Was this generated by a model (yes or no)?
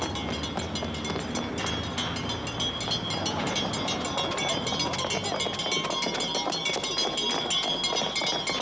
no